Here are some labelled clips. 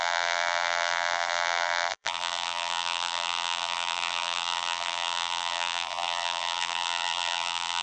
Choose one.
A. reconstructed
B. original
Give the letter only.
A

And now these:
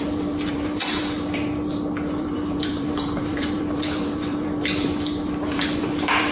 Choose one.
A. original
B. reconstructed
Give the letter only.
B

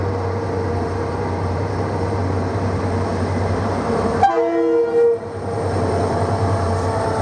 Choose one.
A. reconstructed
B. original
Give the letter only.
A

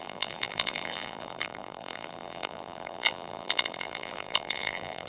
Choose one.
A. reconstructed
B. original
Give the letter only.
A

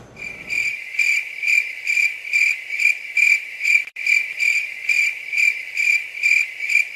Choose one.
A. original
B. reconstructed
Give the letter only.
B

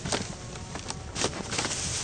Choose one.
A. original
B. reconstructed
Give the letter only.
A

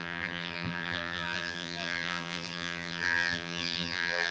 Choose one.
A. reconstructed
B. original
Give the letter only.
A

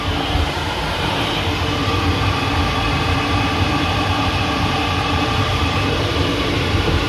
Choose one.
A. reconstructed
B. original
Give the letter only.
A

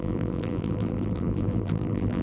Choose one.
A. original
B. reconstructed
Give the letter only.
B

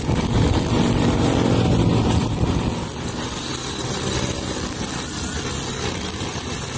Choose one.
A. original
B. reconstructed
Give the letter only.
A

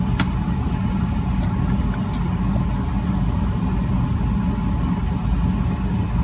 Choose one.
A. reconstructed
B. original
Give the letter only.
B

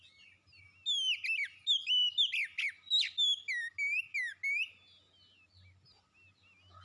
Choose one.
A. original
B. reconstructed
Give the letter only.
A